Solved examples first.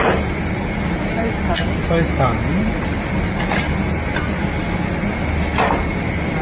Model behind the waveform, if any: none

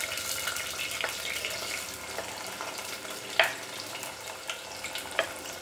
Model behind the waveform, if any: none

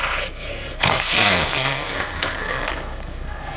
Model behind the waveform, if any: codec, SNAC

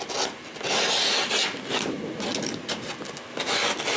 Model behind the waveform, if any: none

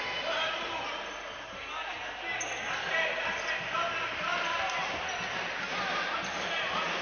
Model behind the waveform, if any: none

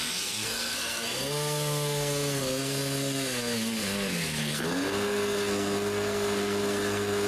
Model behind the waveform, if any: codec, SNAC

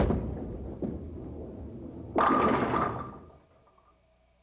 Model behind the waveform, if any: none